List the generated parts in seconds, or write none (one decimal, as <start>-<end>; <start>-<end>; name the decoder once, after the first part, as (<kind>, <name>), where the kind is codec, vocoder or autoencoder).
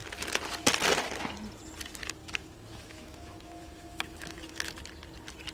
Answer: 2.2-4.7 (autoencoder, DAC-VAE)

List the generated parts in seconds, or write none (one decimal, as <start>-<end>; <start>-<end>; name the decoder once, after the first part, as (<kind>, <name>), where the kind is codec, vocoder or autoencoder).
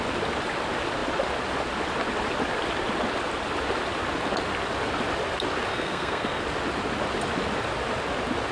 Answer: 5.7-6.4 (codec, SNAC)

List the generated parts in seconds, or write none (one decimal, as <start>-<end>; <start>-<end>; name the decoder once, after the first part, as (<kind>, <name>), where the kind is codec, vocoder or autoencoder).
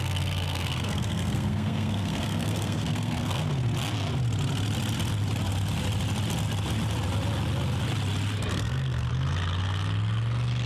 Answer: 0.0-3.5 (codec, SNAC); 8.5-9.1